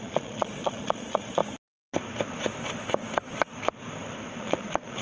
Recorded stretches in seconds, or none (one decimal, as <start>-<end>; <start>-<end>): 1.4-4.4